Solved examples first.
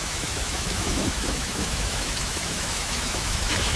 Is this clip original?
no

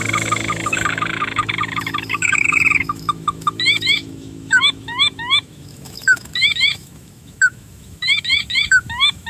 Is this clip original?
no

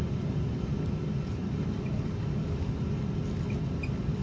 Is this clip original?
yes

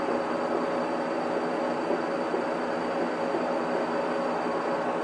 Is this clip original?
yes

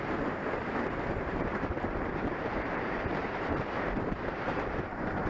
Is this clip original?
no